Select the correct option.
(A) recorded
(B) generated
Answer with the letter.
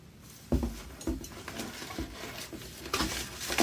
A